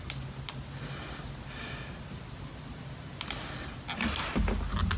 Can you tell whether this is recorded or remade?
recorded